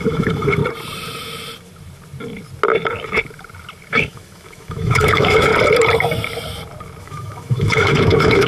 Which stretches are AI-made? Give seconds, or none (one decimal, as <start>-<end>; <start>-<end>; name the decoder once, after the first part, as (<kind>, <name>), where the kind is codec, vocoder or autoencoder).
0.0-0.6 (autoencoder, DAC-VAE); 3.9-5.5; 7.0-8.5